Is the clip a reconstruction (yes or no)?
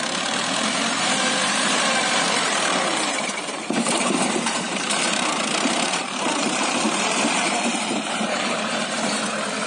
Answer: yes